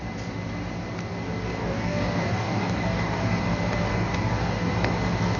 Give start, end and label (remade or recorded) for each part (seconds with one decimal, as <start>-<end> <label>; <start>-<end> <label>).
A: 0.0-1.6 recorded; 1.6-3.4 remade; 3.4-3.9 recorded; 3.9-4.7 remade; 4.7-5.4 recorded